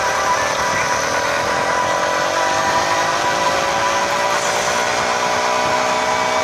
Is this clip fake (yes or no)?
no